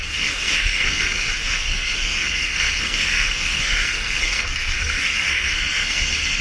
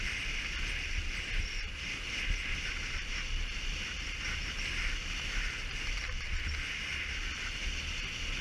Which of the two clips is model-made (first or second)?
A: first